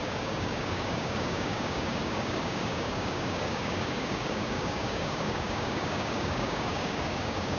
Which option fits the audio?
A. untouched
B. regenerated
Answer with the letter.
B